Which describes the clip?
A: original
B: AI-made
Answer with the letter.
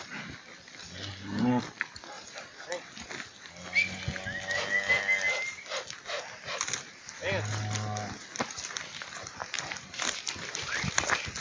A